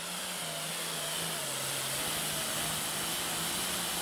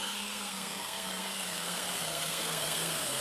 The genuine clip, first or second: first